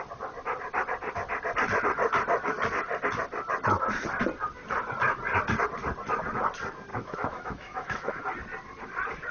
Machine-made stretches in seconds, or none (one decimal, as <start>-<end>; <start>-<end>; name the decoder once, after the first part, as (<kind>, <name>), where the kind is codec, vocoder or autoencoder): 6.9-8.2 (autoencoder, DAC-VAE)